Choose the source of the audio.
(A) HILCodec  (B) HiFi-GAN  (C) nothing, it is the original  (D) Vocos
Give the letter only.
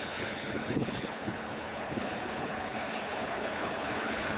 A